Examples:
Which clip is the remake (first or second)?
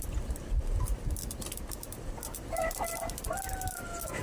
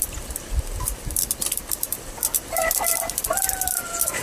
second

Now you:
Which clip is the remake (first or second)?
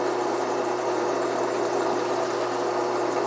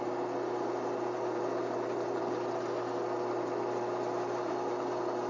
first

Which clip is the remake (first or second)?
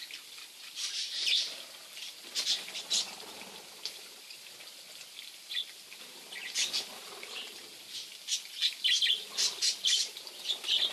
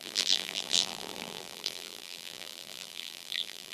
second